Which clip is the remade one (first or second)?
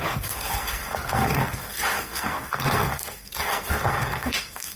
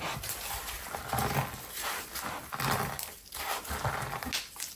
first